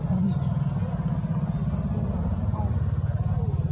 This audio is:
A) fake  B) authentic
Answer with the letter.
B